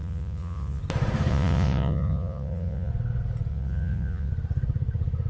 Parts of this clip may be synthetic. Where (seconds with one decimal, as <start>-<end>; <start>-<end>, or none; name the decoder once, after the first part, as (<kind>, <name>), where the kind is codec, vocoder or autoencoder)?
0.0-0.8 (vocoder, Vocos); 1.3-2.9; 3.5-4.3